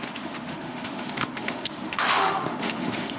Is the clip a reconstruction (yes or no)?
yes